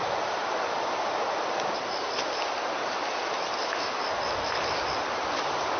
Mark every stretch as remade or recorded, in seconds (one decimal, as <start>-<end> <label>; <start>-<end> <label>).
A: 0.0-5.8 recorded